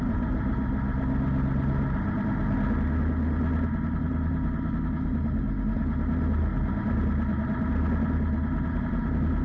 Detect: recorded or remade recorded